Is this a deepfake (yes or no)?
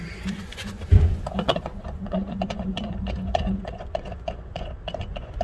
yes